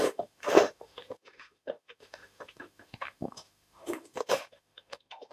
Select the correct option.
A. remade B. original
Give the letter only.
A